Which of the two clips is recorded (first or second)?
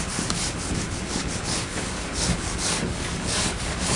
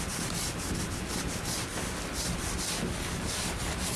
second